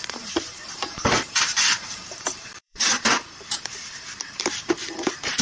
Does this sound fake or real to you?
fake